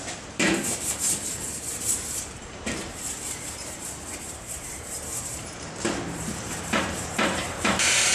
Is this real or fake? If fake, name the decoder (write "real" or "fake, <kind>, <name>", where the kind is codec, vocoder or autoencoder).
fake, vocoder, BigVGAN v2